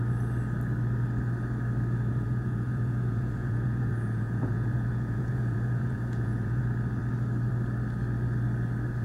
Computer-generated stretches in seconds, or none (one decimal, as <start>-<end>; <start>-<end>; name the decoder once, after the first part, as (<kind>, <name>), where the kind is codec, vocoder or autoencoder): 2.1-6.6 (vocoder, Vocos)